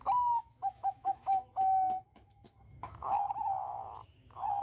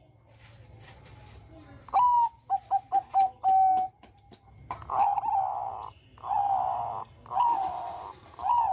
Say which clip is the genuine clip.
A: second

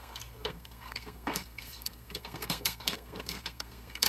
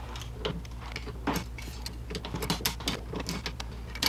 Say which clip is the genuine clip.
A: second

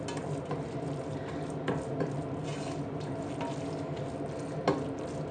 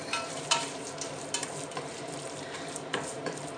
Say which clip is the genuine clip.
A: first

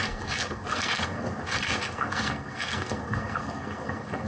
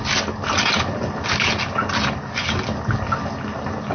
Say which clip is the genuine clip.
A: second